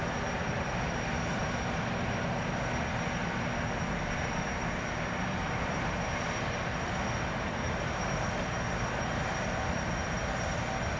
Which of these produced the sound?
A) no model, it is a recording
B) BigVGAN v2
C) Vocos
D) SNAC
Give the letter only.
A